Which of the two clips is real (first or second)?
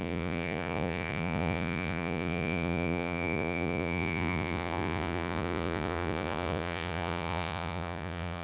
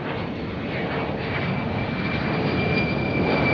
second